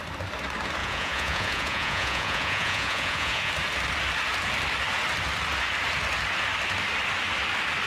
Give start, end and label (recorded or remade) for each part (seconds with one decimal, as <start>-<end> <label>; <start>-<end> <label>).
0.0-0.8 recorded; 0.8-3.5 remade; 3.5-7.9 recorded